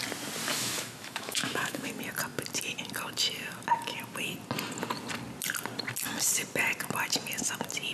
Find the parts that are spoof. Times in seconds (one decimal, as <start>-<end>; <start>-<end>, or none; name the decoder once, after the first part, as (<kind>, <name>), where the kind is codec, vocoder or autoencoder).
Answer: 0.5-1.9 (autoencoder, DAC-VAE)